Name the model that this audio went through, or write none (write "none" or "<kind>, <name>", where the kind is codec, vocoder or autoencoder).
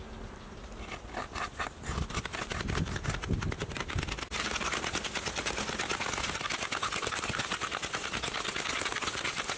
none